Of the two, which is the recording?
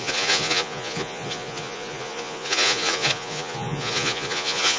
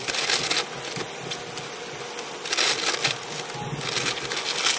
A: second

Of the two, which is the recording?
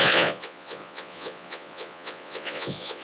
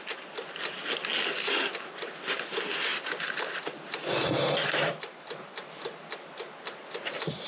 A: second